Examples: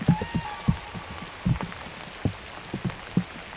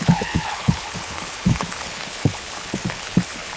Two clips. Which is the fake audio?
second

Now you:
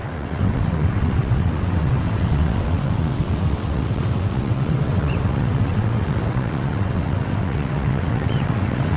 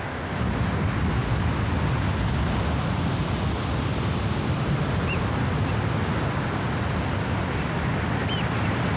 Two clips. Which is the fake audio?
first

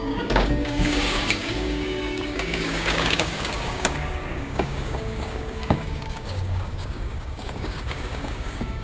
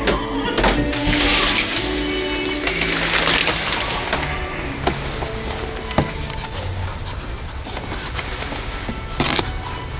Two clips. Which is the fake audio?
first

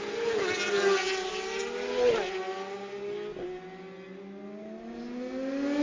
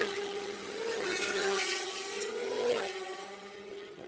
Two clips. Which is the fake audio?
second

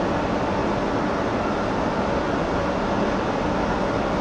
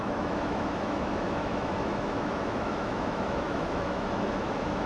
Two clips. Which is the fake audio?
second